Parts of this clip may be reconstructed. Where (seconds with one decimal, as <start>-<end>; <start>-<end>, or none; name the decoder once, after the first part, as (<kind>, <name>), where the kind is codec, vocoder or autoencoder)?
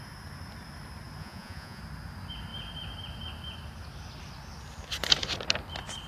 1.2-1.8 (vocoder, Vocos)